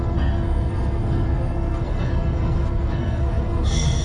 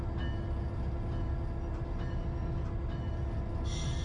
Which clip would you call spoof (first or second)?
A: first